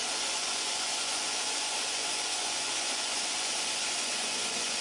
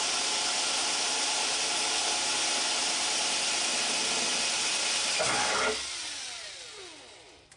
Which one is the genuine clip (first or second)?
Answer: second